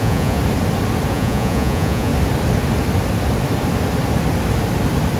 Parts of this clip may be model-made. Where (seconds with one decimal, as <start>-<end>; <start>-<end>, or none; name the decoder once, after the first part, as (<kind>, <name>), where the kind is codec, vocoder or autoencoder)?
0.0-0.4 (vocoder, Vocos); 1.1-2.1